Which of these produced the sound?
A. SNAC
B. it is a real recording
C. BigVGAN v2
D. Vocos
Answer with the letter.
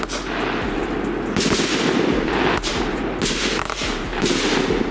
B